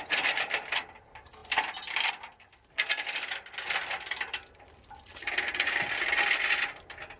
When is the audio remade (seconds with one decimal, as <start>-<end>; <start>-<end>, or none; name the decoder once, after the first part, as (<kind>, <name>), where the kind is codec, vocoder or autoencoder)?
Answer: none